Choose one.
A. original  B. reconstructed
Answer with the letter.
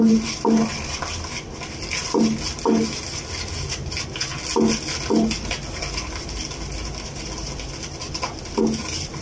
A